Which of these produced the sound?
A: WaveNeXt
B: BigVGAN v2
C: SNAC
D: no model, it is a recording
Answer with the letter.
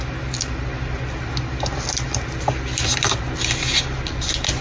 D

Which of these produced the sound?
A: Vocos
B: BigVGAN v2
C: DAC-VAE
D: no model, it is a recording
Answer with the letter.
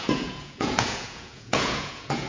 A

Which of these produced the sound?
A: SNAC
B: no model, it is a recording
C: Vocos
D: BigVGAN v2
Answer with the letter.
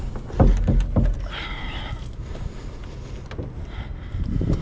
B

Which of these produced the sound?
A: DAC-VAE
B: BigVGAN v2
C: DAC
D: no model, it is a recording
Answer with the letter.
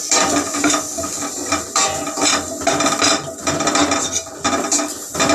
B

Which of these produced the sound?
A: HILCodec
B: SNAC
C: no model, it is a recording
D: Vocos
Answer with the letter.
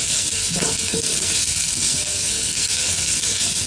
B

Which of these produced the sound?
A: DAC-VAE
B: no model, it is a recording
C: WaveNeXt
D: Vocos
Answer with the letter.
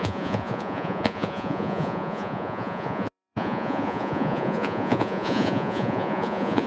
D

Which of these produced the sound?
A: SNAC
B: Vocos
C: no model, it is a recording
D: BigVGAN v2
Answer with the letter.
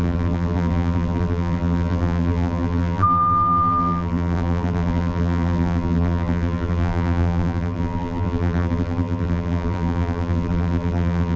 D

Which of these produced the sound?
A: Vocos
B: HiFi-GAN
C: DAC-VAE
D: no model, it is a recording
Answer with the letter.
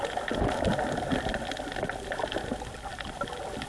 D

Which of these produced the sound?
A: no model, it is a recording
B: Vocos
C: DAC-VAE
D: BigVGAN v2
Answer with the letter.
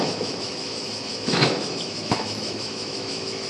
C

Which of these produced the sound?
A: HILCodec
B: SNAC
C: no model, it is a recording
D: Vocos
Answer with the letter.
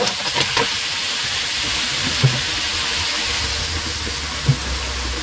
C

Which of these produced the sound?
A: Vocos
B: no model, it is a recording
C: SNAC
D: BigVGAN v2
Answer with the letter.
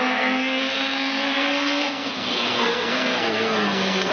C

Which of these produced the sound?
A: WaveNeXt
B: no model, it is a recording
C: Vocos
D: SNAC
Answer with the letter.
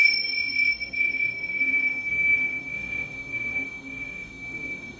D